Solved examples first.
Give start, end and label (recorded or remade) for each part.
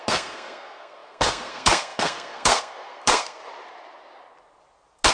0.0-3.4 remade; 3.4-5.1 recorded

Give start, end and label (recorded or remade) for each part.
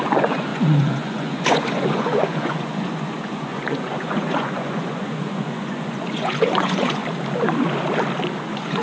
0.0-7.0 remade; 7.0-8.4 recorded; 8.4-8.8 remade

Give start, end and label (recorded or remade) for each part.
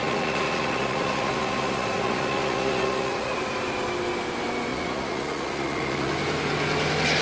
0.0-3.4 remade; 3.4-4.7 recorded; 4.7-6.1 remade; 6.1-7.2 recorded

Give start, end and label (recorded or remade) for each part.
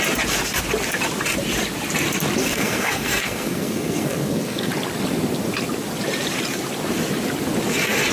0.0-2.4 recorded; 2.4-4.7 remade; 4.7-8.1 recorded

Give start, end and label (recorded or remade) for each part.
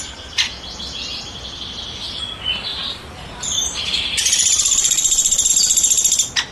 0.0-2.7 recorded; 2.7-5.5 remade; 5.5-6.5 recorded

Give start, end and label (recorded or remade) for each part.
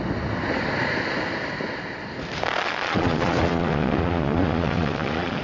0.0-2.6 recorded; 2.6-5.4 remade